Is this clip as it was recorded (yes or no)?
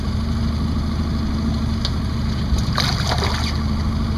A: yes